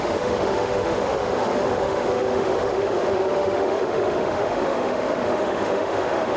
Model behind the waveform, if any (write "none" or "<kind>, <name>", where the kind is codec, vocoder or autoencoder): autoencoder, DAC-VAE